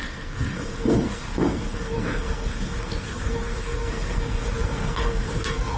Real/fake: fake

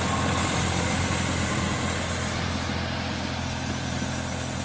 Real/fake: real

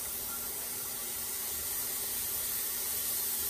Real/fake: fake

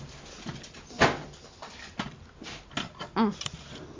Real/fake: real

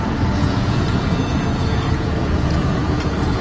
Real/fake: fake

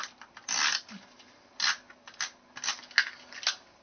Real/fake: real